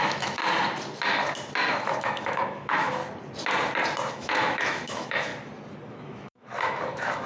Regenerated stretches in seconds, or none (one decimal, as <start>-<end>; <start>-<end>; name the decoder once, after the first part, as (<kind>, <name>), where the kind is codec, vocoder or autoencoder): 0.0-0.4 (autoencoder, DAC-VAE); 1.7-3.0; 4.1-5.3; 5.9-7.3